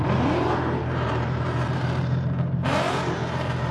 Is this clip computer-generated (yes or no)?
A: yes